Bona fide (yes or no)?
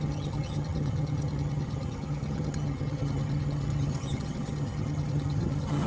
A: no